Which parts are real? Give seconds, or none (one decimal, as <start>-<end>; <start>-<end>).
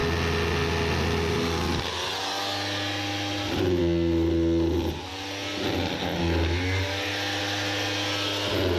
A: 0.0-8.8